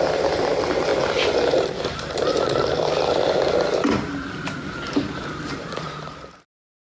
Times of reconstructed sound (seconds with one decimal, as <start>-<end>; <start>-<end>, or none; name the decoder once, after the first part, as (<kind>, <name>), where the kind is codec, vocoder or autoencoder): 0.0-0.9 (vocoder, BigVGAN v2); 5.1-7.0